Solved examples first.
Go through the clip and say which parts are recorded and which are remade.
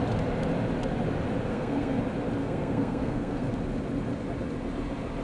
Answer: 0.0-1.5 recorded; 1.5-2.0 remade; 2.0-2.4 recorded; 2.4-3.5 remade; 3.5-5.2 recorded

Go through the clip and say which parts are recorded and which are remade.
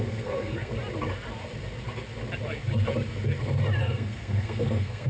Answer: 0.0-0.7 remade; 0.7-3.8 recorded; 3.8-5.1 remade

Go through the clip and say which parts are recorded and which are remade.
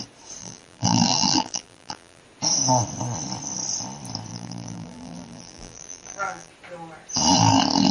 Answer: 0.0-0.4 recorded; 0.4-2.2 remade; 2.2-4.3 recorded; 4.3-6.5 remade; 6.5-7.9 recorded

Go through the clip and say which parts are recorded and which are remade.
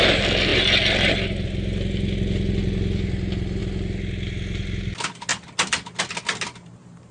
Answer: 0.0-7.1 recorded